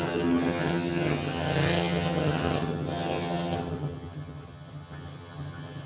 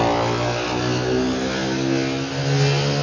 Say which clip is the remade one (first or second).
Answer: first